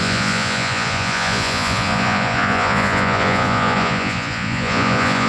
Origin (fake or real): fake